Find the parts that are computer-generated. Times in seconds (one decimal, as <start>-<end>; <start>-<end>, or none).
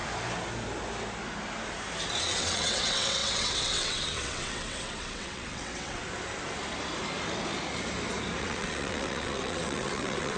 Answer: 2.2-6.0; 8.4-10.4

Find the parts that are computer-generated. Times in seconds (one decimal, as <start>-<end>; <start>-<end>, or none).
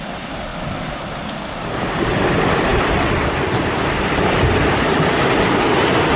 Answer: none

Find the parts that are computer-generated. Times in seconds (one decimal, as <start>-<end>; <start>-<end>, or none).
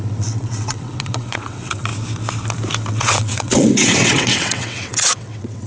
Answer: 0.0-1.9; 2.9-5.7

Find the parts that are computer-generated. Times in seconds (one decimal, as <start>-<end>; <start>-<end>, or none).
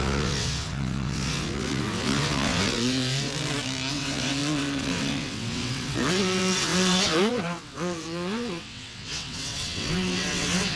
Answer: 0.0-3.3; 3.9-10.8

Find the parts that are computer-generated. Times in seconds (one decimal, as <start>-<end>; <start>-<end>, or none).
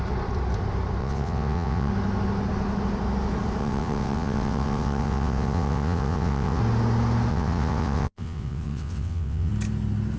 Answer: 1.0-1.9; 3.6-6.6; 7.3-9.5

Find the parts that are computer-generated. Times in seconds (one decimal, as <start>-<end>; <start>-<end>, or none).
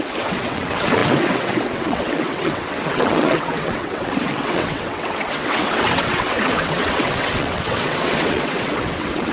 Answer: 0.0-9.3